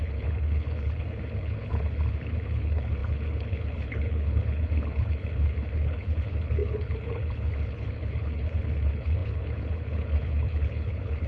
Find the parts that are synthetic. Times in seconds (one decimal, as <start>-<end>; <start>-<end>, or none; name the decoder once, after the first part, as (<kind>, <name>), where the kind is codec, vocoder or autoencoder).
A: 0.0-11.3 (codec, HILCodec)